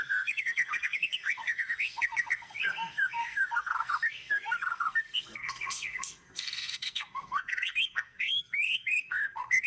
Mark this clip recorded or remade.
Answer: remade